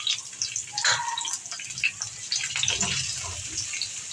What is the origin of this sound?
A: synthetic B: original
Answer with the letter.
B